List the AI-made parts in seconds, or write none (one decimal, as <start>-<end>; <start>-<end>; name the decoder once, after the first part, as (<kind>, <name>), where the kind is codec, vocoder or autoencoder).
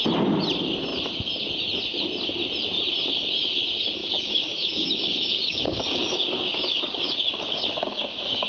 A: 4.0-8.5 (codec, DAC)